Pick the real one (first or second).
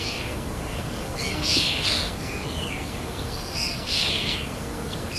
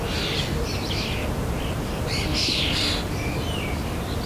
second